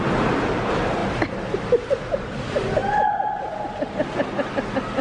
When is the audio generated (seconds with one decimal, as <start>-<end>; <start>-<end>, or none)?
2.8-3.7

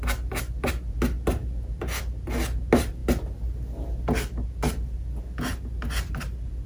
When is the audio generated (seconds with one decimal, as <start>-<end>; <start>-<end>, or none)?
none

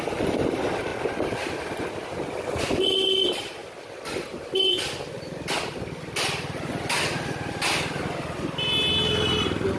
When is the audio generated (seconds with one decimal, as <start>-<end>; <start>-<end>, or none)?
none